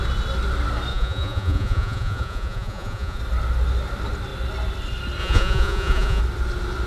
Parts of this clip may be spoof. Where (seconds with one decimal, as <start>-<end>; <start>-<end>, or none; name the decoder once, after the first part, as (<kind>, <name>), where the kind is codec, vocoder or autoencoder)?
0.9-3.2 (vocoder, Vocos); 5.2-6.2